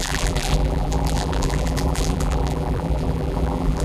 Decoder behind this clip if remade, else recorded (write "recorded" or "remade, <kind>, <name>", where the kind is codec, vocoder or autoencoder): remade, vocoder, BigVGAN v2